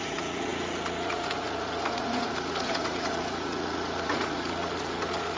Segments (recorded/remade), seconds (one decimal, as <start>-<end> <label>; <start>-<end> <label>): 0.0-5.4 remade